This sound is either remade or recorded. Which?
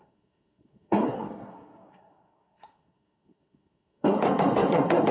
remade